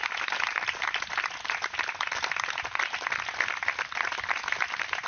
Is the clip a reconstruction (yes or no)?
no